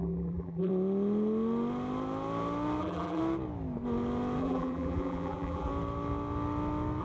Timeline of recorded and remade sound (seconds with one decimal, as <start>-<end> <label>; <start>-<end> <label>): 0.0-0.7 remade; 0.7-2.8 recorded; 2.8-3.2 remade; 3.2-4.4 recorded; 4.4-5.7 remade; 5.7-7.0 recorded